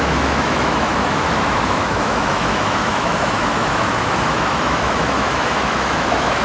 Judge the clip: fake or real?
fake